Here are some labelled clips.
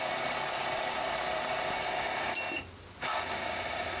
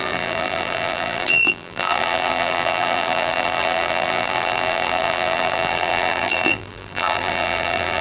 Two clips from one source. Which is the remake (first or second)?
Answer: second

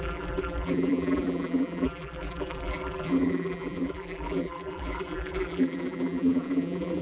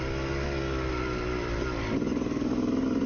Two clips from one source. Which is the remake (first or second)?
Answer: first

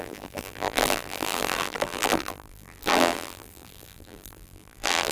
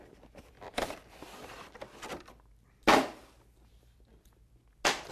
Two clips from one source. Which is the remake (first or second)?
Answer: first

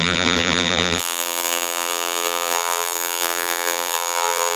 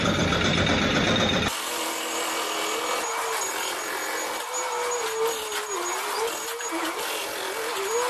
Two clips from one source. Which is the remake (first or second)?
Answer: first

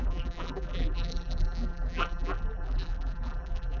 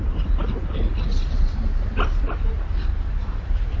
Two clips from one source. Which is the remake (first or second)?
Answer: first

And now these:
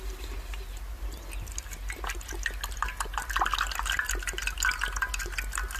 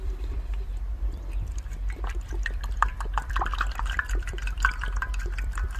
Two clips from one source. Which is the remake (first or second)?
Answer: second